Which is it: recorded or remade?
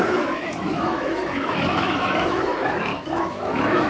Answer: remade